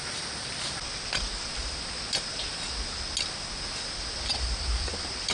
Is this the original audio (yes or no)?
yes